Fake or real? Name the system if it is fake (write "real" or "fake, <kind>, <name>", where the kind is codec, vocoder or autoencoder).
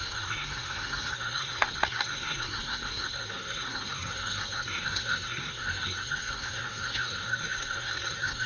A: fake, codec, SNAC